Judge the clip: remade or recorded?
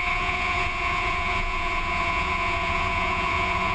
remade